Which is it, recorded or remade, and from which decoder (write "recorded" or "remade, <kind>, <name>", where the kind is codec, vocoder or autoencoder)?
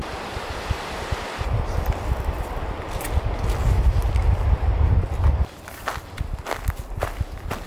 recorded